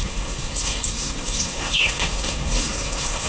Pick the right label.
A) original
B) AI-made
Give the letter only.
B